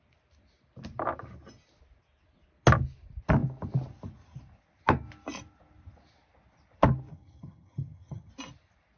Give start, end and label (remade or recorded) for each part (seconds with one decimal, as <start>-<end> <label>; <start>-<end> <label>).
0.0-7.1 recorded; 7.1-8.3 remade; 8.3-9.0 recorded